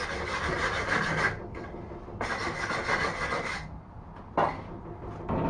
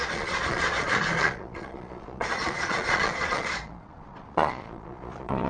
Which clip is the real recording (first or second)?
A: first